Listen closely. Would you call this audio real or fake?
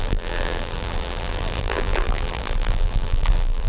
fake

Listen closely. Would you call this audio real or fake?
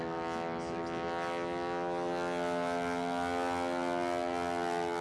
real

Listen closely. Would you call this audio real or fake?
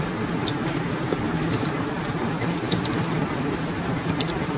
fake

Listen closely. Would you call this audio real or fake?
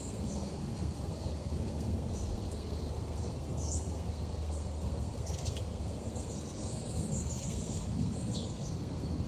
fake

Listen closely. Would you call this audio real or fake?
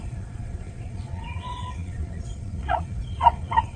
fake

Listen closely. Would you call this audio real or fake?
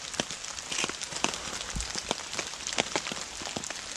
real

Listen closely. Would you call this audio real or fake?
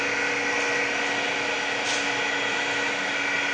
real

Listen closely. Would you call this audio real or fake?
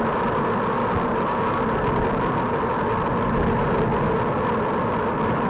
real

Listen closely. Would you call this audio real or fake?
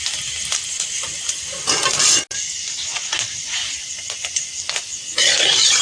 real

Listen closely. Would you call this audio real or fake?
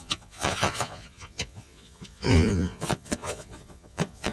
fake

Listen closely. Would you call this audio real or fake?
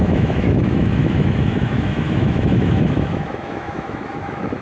fake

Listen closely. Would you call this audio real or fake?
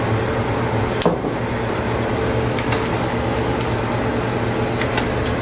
real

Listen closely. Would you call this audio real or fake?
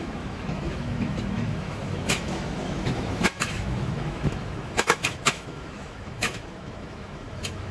fake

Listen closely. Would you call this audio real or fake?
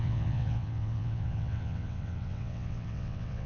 fake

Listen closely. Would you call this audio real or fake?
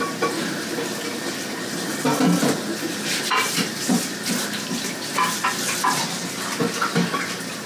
real